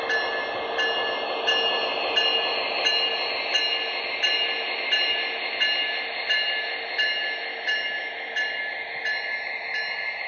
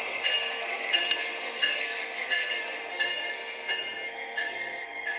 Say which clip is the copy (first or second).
second